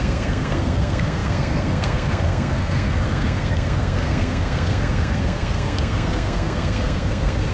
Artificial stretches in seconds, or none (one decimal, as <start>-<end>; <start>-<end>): 0.0-7.5